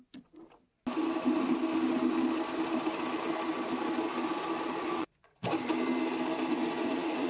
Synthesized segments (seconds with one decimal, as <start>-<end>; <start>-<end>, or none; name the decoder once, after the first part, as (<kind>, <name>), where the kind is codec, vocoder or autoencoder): 0.0-0.4 (vocoder, Vocos); 4.8-5.4; 6.5-7.3